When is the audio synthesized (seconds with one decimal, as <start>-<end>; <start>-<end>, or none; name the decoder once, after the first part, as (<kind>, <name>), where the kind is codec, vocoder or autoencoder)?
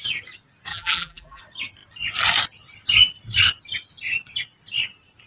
0.7-1.4 (vocoder, BigVGAN v2)